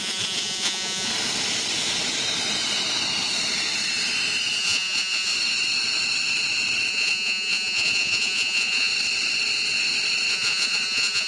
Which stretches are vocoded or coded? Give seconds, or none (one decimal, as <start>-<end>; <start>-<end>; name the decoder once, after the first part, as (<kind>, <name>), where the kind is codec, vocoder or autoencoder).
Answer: 0.0-1.1 (vocoder, Vocos); 4.6-5.3; 6.9-8.9; 10.3-11.3